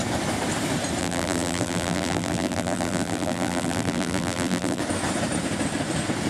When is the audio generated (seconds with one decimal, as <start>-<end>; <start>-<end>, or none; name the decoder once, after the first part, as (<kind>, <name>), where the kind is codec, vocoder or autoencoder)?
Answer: 1.0-4.8 (vocoder, BigVGAN v2)